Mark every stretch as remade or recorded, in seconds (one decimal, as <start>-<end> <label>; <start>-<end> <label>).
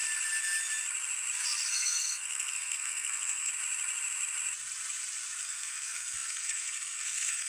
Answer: 0.0-1.7 recorded; 1.7-3.5 remade; 3.5-5.4 recorded; 5.4-7.5 remade